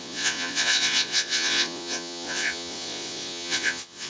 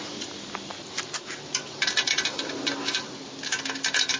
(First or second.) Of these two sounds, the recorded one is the second